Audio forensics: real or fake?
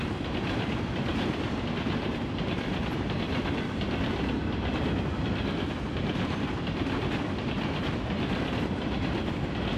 real